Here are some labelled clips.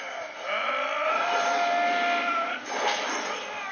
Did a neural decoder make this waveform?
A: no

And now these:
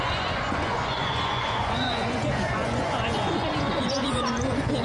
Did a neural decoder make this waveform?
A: yes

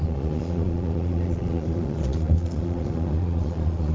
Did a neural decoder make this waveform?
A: yes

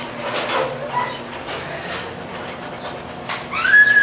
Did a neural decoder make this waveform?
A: no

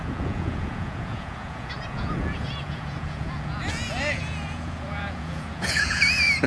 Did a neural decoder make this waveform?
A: yes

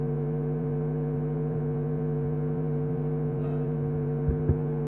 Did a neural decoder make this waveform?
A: yes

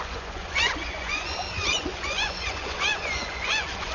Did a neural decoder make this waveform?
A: yes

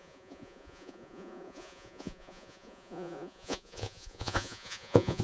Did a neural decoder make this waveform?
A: yes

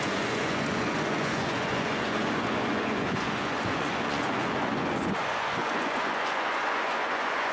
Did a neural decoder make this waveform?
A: yes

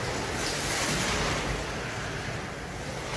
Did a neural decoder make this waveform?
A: no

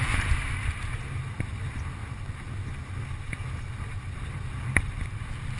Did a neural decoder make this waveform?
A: no